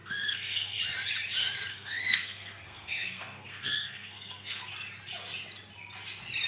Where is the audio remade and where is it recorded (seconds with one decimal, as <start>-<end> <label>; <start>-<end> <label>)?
0.0-0.8 remade; 0.8-1.7 recorded; 1.7-4.7 remade; 4.7-6.5 recorded